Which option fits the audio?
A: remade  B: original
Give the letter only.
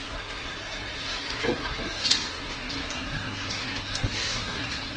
A